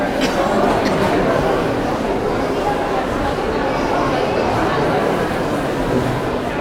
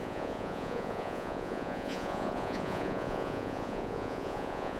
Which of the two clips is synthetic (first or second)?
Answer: second